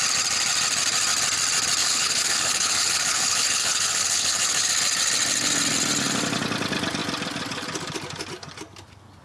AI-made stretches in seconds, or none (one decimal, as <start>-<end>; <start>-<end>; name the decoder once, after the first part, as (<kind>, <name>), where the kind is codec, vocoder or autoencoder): 1.8-4.7 (codec, HILCodec)